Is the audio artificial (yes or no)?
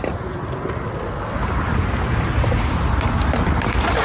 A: no